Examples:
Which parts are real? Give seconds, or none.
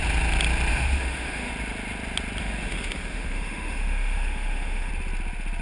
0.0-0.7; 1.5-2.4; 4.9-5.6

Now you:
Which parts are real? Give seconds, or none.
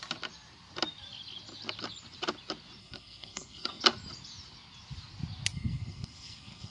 0.0-2.8; 3.8-5.5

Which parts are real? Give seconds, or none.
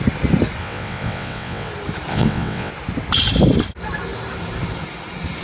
0.0-0.6; 1.7-2.1; 2.7-5.4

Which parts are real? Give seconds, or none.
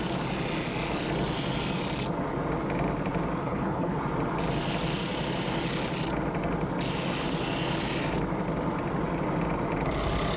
0.0-3.4; 4.0-10.4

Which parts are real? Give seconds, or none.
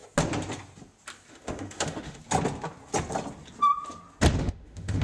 0.0-1.3; 2.2-4.4